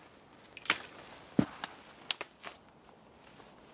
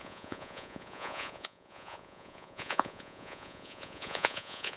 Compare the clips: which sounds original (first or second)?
first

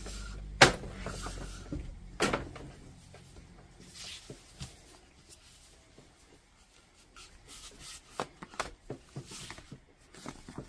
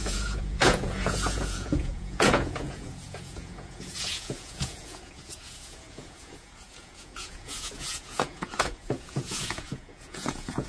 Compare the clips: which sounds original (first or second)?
first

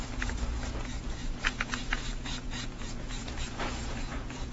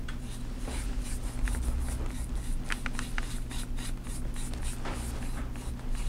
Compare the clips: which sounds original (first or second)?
second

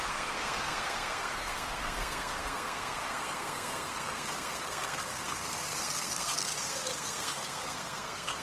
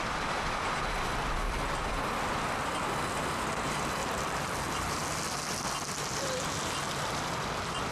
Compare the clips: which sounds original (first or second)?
second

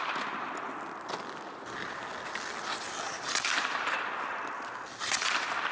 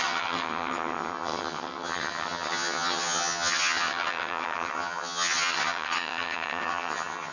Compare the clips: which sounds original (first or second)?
first